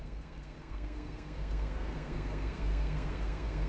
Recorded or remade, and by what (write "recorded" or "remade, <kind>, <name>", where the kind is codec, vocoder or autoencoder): remade, codec, SNAC